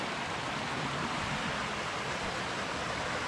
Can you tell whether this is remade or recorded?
recorded